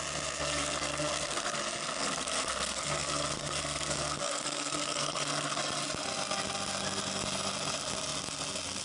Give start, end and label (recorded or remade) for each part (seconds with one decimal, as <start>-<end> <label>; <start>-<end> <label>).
0.0-0.4 recorded; 0.4-1.6 remade; 1.6-2.0 recorded; 2.0-5.6 remade; 5.6-8.8 recorded